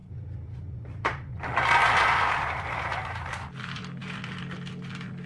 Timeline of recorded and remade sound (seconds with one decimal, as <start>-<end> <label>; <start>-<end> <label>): 0.0-1.4 remade; 1.4-1.8 recorded; 1.8-3.3 remade; 3.3-5.3 recorded